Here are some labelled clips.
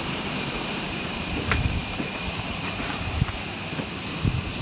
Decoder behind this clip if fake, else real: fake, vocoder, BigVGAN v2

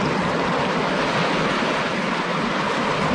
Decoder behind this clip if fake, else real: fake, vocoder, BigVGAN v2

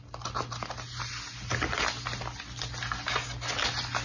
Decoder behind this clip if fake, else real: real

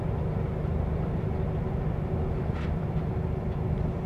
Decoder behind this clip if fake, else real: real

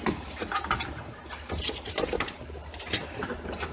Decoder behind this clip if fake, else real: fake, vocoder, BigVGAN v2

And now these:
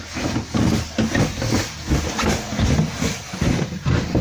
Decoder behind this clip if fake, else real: real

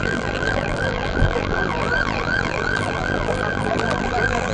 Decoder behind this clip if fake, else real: fake, vocoder, BigVGAN v2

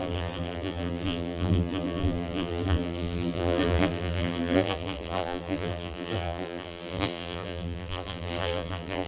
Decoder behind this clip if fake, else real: fake, vocoder, BigVGAN v2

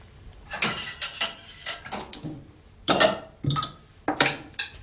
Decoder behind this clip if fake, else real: fake, vocoder, BigVGAN v2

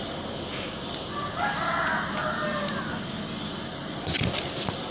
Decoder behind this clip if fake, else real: real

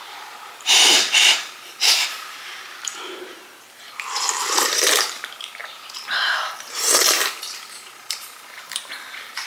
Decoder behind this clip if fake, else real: fake, vocoder, BigVGAN v2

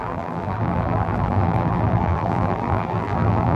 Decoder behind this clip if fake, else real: fake, vocoder, BigVGAN v2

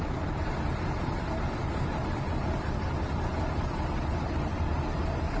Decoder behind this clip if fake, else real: fake, vocoder, BigVGAN v2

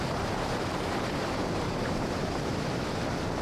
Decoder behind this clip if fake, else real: fake, vocoder, BigVGAN v2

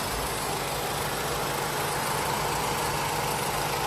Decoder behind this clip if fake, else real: real